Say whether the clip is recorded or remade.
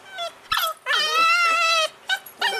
recorded